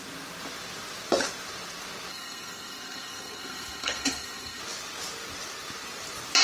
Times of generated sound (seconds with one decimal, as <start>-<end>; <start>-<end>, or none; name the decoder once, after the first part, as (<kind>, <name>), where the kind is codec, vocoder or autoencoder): 2.1-4.6 (codec, SNAC)